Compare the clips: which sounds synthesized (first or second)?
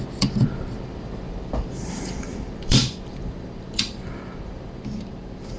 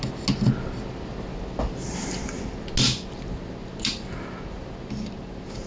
first